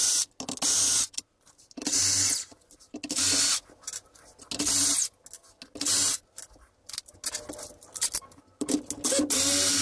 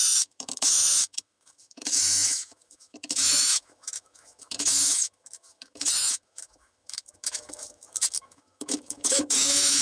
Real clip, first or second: first